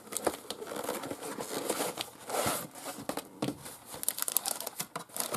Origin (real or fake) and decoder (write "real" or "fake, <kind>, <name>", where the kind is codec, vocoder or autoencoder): real